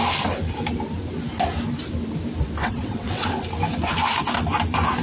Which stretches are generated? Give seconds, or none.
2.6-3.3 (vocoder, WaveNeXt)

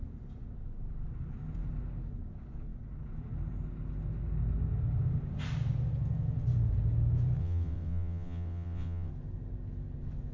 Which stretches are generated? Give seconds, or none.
7.4-9.1 (vocoder, WaveNeXt)

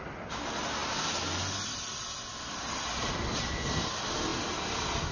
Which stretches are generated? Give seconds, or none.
none